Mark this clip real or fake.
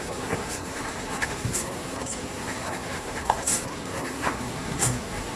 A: fake